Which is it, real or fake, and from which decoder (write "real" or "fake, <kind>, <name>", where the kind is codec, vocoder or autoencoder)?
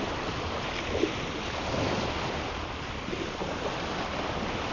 real